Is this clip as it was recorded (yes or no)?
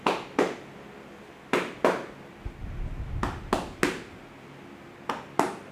yes